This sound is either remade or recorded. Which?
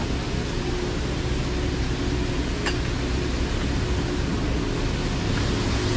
recorded